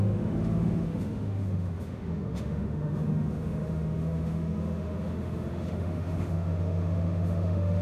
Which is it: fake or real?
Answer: fake